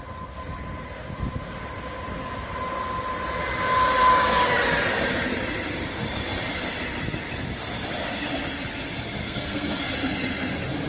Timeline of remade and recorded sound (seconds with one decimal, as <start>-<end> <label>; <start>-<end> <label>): 0.0-9.2 recorded; 9.2-9.8 remade; 9.8-10.9 recorded